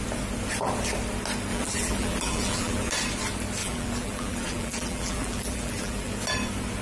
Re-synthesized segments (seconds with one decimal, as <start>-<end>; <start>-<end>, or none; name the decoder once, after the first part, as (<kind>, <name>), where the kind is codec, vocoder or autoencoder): 1.5-2.9 (vocoder, BigVGAN v2); 3.6-6.1